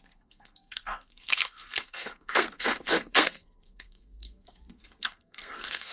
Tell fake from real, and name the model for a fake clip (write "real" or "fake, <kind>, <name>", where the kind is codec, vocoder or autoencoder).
fake, codec, SNAC